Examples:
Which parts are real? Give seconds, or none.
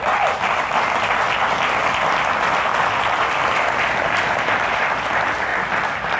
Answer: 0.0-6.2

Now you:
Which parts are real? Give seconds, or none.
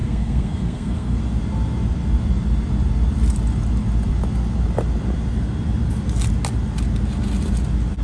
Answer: 1.2-8.0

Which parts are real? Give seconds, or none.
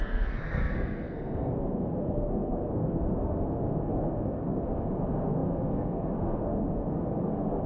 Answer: none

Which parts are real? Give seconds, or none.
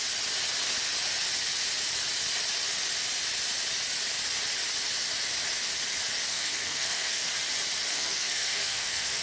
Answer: 0.0-6.3; 7.3-7.9